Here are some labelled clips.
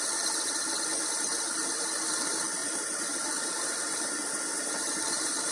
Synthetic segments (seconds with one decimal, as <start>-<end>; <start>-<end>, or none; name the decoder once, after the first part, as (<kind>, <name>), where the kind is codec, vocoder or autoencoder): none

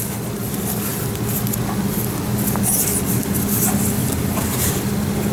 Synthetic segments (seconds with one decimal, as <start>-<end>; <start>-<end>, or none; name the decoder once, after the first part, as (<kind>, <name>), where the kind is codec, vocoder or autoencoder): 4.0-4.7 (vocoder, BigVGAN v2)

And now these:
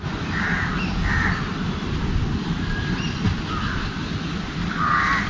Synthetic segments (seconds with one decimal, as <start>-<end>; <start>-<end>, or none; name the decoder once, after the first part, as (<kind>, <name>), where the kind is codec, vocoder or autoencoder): none

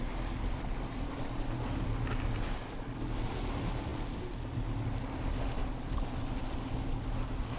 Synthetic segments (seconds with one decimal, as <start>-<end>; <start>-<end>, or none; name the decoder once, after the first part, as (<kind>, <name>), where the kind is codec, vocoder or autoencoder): none

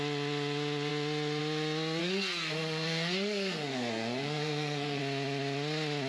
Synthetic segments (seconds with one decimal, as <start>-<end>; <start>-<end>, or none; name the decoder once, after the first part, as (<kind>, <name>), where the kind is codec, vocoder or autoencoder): 2.0-5.0 (codec, SNAC)

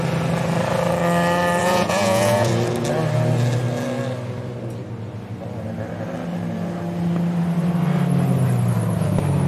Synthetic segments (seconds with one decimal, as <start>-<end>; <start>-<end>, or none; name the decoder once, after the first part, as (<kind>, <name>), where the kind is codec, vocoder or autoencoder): 1.6-2.5 (vocoder, Vocos)

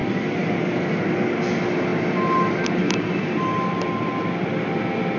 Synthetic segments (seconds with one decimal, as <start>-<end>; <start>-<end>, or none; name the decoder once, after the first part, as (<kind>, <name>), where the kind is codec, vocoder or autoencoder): none